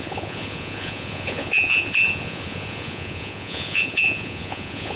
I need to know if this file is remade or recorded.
remade